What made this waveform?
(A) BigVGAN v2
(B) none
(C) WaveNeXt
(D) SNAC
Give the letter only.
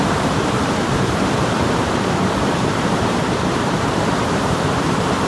A